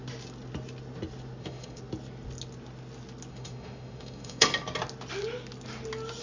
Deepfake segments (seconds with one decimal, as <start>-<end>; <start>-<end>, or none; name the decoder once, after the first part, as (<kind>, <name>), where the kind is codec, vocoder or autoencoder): 1.4-1.8 (autoencoder, DAC-VAE); 3.3-4.5